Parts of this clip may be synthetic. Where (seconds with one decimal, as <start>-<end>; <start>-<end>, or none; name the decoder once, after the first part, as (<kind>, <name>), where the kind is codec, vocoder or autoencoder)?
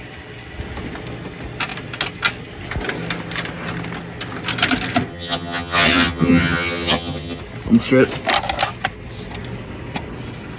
5.1-7.4 (vocoder, HiFi-GAN)